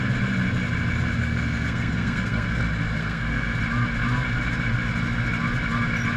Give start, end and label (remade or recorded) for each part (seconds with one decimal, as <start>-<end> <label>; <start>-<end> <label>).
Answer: 0.0-1.2 recorded; 1.2-2.6 remade; 2.6-3.0 recorded; 3.0-3.6 remade; 3.6-6.2 recorded